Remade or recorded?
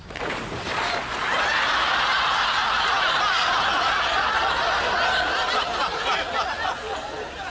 recorded